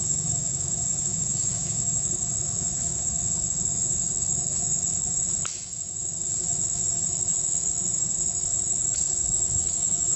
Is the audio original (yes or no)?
no